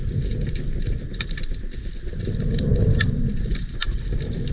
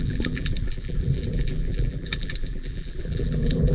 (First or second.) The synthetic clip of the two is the second